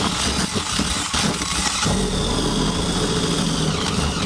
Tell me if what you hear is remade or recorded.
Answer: recorded